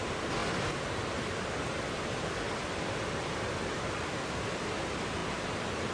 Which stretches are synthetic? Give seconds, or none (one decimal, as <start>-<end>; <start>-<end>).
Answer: none